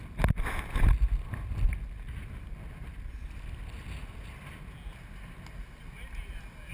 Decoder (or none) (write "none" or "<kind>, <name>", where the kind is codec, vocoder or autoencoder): none